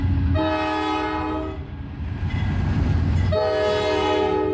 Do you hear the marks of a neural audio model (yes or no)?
no